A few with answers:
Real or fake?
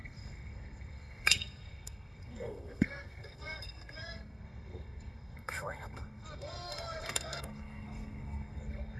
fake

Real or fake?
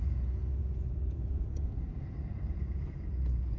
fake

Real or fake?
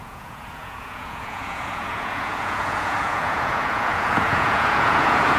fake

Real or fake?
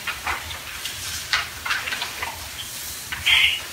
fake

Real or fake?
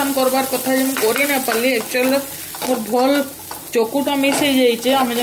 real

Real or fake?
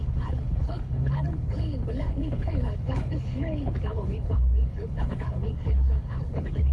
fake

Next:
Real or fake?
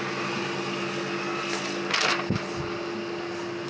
real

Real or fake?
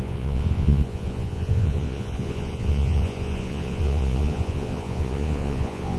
fake